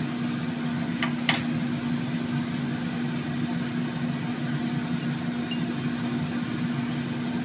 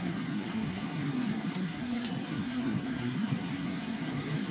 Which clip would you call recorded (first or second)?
first